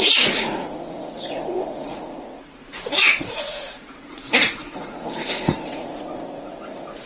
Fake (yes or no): yes